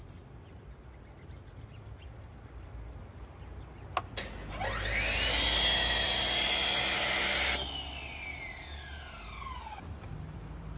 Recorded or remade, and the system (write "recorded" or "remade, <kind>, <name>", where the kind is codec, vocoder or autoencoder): recorded